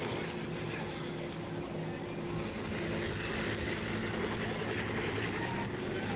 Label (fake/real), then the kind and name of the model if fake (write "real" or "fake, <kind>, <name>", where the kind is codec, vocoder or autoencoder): real